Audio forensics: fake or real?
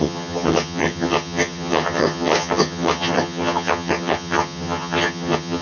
fake